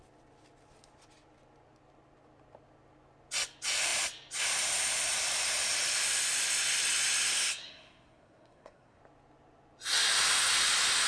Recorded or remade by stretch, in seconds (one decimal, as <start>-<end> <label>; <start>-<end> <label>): 0.0-7.3 recorded; 7.3-9.0 remade; 9.0-11.1 recorded